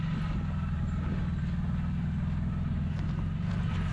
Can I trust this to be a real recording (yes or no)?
yes